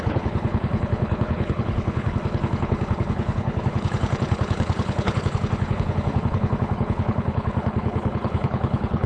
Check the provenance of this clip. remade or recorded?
remade